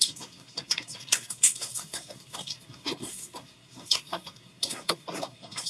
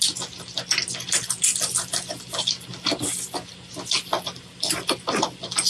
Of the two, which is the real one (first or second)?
second